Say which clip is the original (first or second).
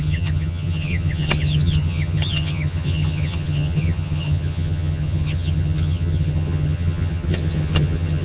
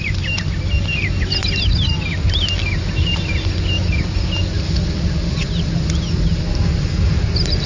second